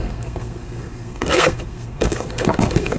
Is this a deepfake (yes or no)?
yes